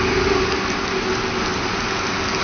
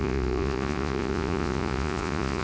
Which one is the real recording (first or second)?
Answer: first